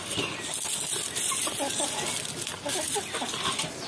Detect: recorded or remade recorded